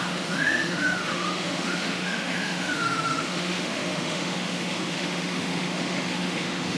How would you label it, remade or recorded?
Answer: remade